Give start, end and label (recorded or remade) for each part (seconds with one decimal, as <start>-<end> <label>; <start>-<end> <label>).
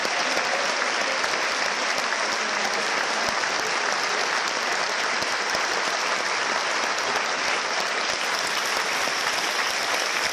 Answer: 0.0-10.3 recorded